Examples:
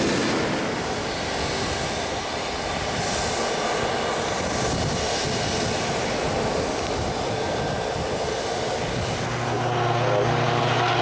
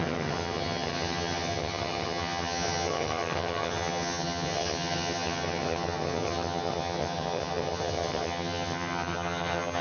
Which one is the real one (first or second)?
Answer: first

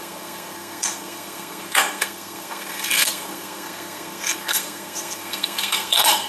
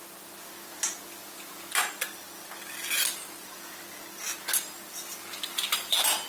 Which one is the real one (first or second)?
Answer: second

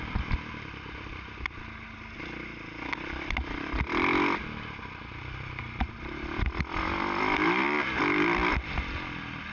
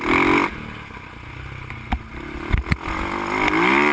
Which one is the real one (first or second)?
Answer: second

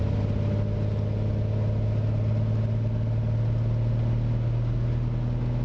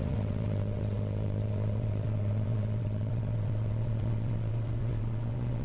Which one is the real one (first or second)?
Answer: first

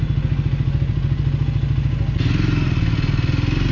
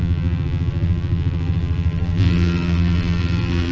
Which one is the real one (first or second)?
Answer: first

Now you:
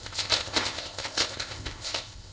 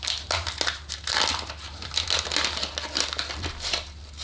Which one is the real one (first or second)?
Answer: second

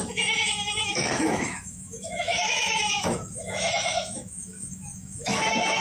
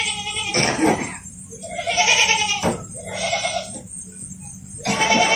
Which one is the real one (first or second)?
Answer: second